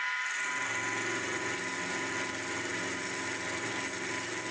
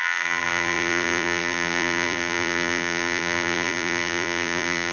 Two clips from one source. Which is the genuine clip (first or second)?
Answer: first